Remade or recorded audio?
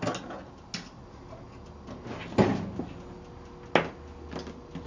recorded